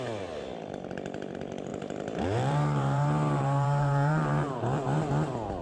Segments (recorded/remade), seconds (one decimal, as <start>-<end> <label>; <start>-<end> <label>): 0.0-1.7 recorded; 1.7-5.1 remade; 5.1-5.6 recorded